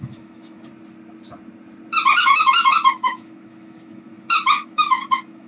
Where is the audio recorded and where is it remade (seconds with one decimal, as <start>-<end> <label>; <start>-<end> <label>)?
0.0-0.7 remade; 0.7-2.2 recorded; 2.2-5.5 remade